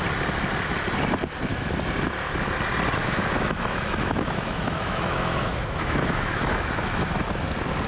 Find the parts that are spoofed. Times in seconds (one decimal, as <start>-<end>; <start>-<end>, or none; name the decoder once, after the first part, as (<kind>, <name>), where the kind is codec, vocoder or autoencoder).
3.0-7.1 (autoencoder, DAC-VAE)